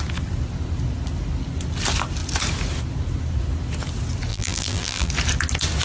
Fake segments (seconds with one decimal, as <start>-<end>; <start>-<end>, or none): 4.3-5.1